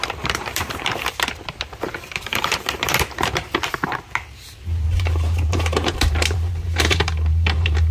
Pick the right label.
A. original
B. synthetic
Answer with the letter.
B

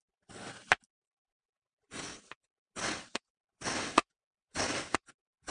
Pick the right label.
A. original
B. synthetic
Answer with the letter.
A